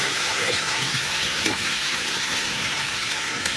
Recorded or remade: remade